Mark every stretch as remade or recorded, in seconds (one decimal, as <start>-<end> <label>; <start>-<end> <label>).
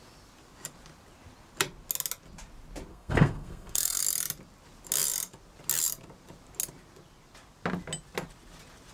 0.0-2.9 recorded; 2.9-4.0 remade; 4.0-8.9 recorded